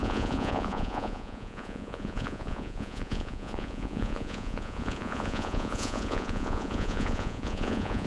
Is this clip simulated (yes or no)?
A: yes